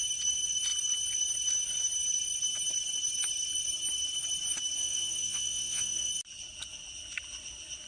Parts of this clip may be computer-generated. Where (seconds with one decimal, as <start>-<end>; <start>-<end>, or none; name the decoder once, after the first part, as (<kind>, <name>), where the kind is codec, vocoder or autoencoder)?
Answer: 4.8-6.1 (vocoder, Vocos)